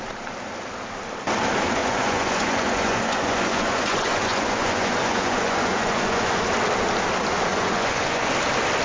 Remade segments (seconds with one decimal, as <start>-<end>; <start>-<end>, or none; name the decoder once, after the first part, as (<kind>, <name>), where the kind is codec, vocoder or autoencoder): 1.8-6.4 (vocoder, Vocos); 7.5-8.3